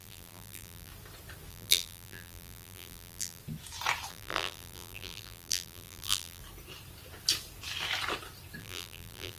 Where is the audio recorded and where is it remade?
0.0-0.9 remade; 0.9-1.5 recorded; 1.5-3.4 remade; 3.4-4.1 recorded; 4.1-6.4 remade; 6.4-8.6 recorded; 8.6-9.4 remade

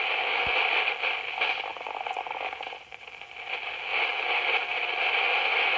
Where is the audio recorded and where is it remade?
0.0-5.8 recorded